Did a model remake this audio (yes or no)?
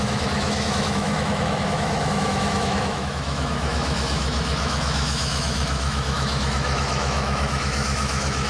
yes